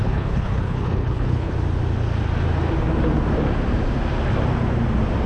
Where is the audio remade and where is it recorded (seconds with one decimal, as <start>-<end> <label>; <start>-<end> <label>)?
0.0-1.5 remade; 1.5-5.3 recorded